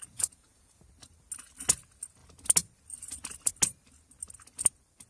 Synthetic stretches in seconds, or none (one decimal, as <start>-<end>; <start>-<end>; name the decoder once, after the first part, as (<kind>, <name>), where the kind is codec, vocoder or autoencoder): 0.0-0.8 (vocoder, Vocos)